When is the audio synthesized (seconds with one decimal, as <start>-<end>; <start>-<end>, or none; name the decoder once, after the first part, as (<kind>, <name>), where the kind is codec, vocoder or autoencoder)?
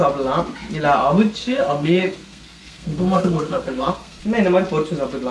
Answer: 1.4-4.2 (codec, SNAC)